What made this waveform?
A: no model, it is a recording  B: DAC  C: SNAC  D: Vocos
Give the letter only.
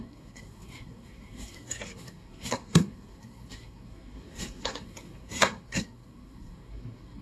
C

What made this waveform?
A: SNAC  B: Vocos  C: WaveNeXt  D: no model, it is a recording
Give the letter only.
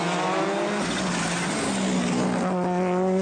D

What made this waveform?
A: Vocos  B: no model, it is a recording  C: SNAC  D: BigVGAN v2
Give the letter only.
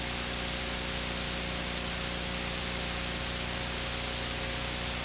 B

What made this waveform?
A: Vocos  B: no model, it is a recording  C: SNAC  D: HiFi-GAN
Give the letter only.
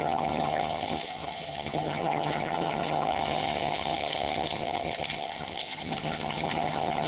D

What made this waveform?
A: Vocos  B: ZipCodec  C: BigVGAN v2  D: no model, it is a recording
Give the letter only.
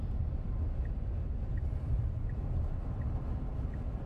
D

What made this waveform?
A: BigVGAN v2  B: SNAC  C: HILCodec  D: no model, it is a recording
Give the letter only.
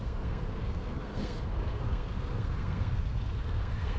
B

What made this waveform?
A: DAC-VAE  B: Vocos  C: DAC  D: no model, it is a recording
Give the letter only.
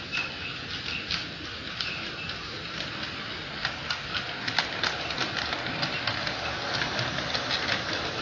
D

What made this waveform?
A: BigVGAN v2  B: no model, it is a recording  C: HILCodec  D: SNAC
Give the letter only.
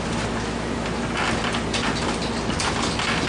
B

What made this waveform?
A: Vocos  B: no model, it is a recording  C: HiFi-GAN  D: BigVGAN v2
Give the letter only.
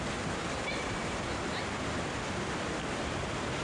B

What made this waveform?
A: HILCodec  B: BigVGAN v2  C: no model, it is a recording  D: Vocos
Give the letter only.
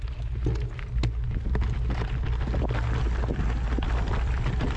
C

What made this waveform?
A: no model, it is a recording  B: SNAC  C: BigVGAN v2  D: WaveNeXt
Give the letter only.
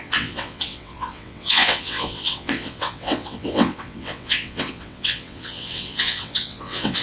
D